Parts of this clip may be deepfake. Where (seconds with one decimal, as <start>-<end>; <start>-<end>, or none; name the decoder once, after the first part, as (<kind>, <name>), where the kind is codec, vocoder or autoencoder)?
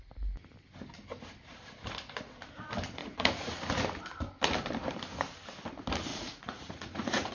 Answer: 3.0-3.5 (vocoder, Vocos); 6.1-7.3